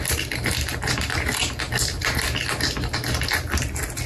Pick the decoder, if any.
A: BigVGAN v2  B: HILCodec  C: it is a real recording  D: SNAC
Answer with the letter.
C